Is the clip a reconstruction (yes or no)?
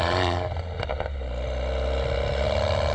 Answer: no